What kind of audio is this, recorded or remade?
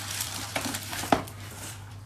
remade